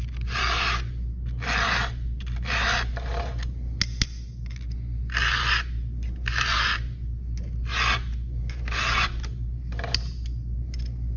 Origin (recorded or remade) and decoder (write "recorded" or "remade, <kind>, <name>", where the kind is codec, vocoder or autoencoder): recorded